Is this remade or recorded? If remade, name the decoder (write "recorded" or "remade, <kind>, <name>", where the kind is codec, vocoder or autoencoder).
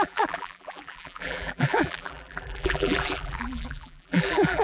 remade, vocoder, BigVGAN v2